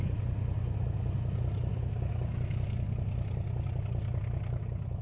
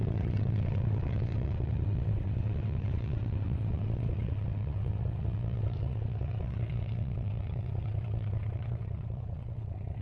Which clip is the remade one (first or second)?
second